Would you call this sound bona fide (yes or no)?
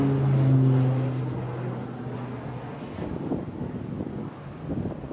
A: yes